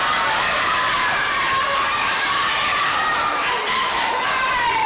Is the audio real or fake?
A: fake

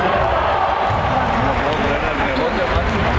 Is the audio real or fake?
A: fake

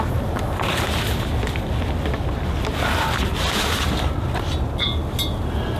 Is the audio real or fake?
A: real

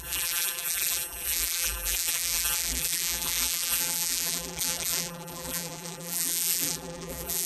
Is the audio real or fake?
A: fake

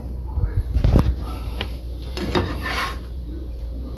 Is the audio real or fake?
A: fake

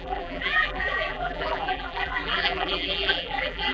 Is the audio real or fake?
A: fake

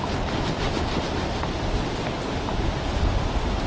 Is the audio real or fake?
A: fake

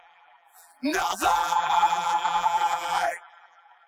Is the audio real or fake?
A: fake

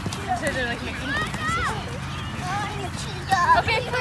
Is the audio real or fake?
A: real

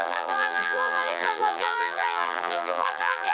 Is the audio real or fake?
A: fake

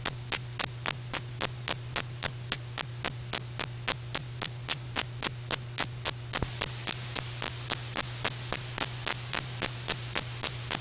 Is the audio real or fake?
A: real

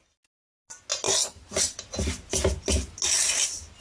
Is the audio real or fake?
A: real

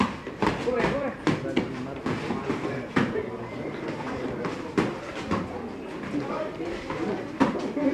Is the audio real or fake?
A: real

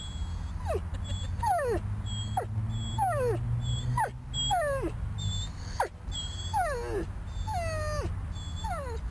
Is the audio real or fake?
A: real